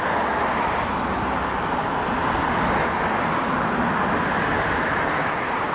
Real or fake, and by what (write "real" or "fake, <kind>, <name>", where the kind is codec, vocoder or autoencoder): real